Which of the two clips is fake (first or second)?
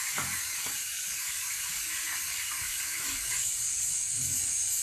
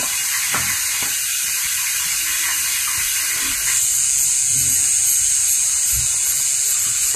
first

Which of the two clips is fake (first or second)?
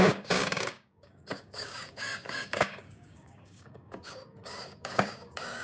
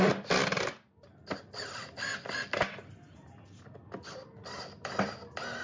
first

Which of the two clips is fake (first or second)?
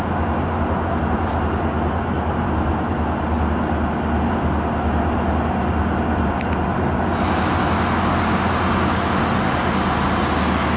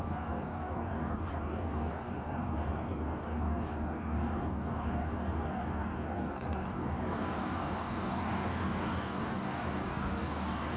second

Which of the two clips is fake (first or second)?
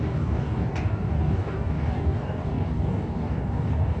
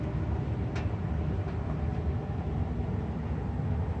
first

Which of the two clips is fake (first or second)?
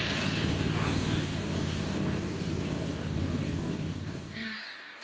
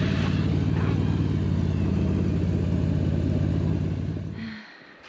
first